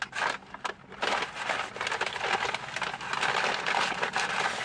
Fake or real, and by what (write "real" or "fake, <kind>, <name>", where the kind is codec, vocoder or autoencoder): real